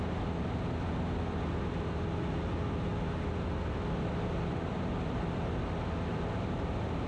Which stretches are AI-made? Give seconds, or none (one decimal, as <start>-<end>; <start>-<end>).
none